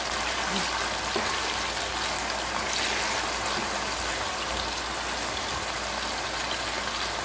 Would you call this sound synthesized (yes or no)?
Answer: no